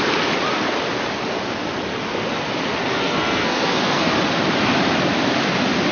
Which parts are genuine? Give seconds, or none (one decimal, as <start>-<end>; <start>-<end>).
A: 0.0-2.8; 4.1-5.9